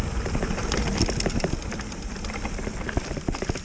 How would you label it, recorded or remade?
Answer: recorded